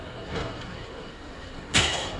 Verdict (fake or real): fake